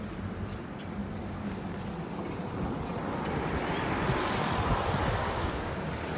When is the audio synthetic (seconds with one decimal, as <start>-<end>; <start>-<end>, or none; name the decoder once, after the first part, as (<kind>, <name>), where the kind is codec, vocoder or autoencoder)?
5.2-5.7 (codec, DAC)